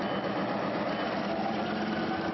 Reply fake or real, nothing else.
real